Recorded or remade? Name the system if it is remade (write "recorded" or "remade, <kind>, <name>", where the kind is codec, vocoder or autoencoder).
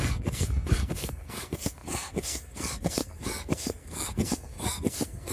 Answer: remade, codec, SNAC